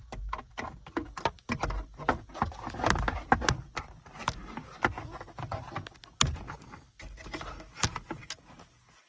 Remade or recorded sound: recorded